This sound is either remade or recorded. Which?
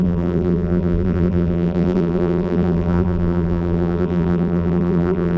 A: remade